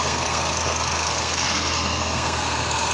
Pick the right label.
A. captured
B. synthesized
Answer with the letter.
B